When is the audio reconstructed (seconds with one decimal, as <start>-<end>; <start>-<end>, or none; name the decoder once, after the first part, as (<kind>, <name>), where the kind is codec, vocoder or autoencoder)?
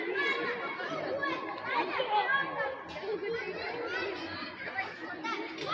none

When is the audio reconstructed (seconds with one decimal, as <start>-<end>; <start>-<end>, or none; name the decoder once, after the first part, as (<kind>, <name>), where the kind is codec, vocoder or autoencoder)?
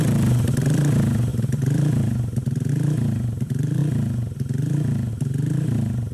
0.0-3.8 (vocoder, BigVGAN v2); 5.1-6.1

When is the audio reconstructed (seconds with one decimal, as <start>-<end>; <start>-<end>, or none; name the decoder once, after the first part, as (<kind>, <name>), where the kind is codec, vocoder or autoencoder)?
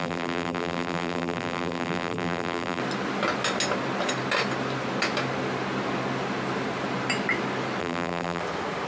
0.0-2.8 (vocoder, BigVGAN v2); 7.8-8.4